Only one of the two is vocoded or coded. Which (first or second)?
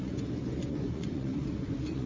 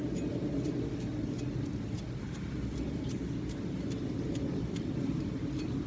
first